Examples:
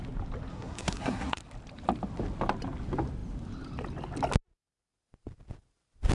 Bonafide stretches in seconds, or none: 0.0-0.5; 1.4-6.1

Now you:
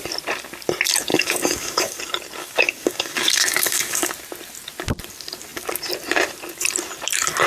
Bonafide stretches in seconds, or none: 0.0-1.1; 2.0-2.4; 4.1-7.5

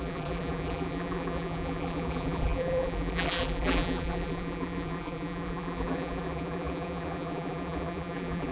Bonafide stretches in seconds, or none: none

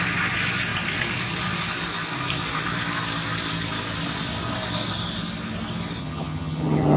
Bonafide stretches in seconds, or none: 0.0-6.0

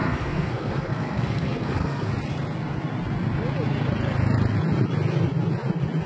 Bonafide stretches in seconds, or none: 2.1-6.1